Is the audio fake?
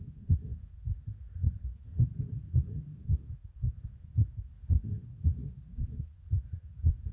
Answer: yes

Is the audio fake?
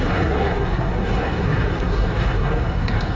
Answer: yes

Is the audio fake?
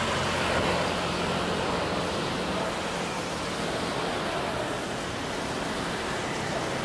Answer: no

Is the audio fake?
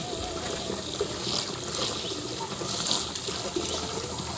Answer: no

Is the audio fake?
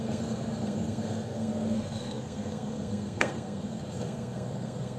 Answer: yes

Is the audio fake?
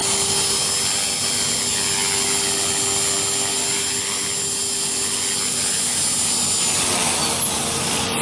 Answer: no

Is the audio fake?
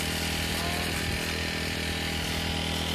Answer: no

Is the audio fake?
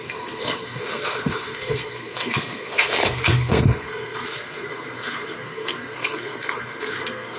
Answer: yes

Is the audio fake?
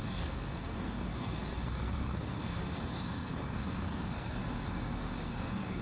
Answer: yes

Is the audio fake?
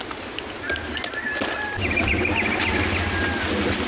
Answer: no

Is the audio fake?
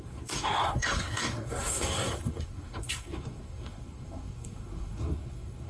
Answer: yes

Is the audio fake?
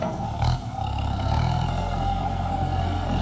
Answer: yes